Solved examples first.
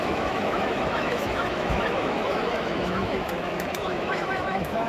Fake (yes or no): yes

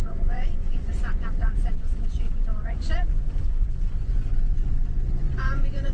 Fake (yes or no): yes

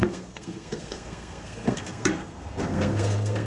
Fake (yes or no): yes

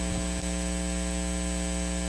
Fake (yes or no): no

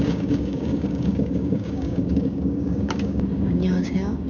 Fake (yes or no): yes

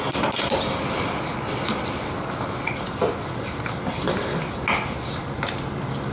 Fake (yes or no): no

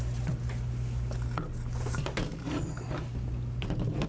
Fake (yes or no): no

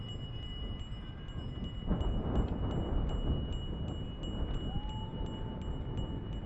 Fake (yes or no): no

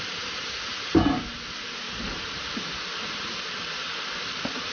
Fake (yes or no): no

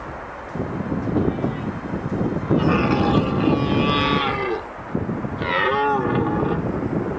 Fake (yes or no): no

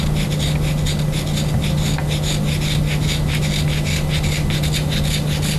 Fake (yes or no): no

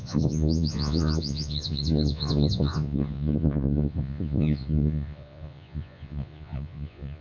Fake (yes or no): yes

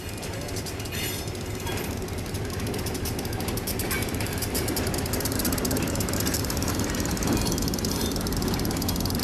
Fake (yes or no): no